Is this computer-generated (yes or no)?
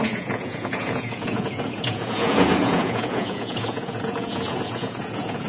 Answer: yes